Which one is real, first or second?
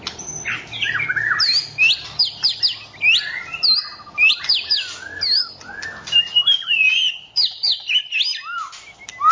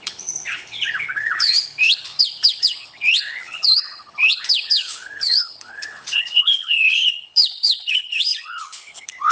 first